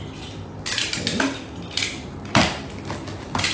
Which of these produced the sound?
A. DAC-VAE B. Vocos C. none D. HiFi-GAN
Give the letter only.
C